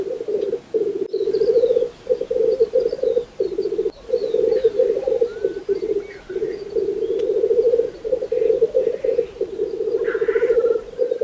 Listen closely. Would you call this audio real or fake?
real